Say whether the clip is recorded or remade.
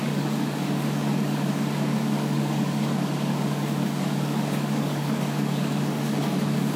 remade